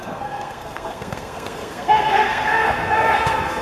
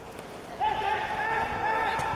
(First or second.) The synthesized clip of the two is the first